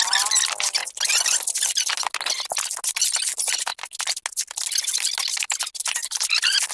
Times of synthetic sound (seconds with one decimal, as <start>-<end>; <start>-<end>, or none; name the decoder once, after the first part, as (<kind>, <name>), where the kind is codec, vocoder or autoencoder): none